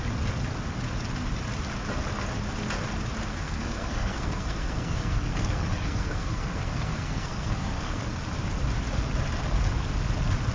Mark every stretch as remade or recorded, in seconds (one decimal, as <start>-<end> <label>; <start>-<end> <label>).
0.0-3.3 recorded; 3.3-8.2 remade; 8.2-10.5 recorded